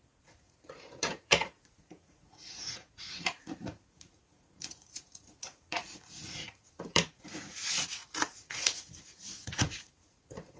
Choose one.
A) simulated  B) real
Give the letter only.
A